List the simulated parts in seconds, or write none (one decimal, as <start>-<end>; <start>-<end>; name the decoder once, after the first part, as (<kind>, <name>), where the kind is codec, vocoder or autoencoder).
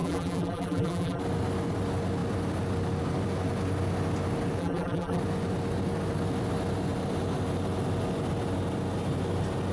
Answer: 0.0-1.2 (vocoder, BigVGAN v2); 4.6-5.2